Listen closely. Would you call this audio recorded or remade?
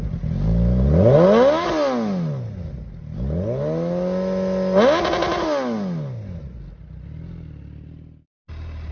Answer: recorded